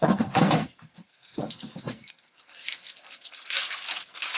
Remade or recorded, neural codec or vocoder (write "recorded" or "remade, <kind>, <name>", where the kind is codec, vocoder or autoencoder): remade, codec, SNAC